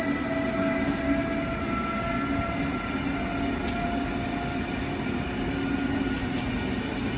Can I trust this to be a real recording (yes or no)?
yes